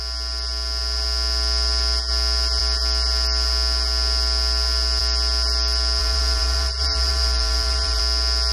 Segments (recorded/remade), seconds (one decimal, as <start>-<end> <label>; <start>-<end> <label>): 0.0-6.0 recorded; 6.0-8.0 remade; 8.0-8.5 recorded